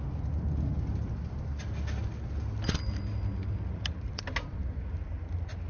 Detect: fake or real real